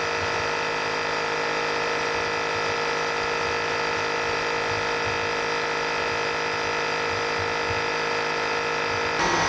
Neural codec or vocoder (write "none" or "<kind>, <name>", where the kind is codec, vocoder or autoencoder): none